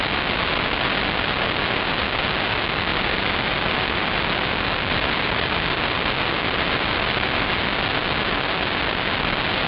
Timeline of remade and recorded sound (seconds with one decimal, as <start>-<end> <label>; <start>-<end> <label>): 0.0-9.7 recorded